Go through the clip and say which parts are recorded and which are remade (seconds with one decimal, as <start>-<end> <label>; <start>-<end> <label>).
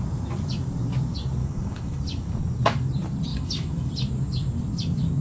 0.0-1.4 recorded; 1.4-2.0 remade; 2.0-3.3 recorded; 3.3-3.9 remade; 3.9-5.2 recorded